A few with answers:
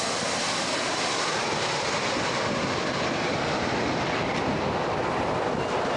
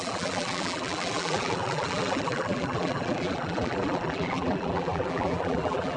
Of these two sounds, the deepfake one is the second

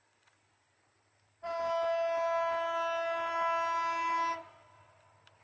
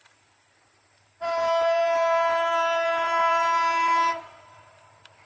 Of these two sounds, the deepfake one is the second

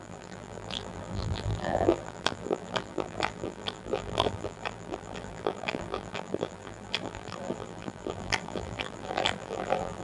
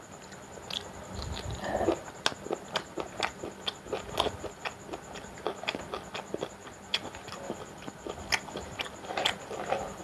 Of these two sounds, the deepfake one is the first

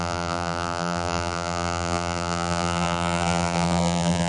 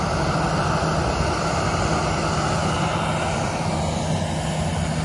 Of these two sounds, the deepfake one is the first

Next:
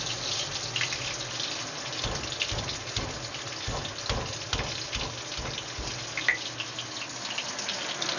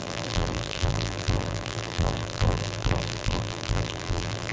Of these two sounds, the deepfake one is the second